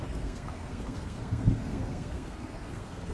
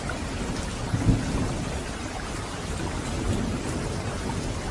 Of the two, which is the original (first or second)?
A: second